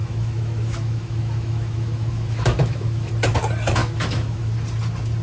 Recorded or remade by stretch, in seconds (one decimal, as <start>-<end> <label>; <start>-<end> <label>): 0.0-3.1 remade; 3.1-3.8 recorded; 3.8-4.5 remade; 4.5-5.2 recorded